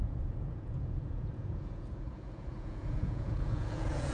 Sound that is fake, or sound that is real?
fake